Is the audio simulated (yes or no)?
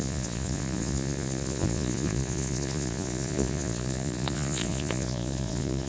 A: yes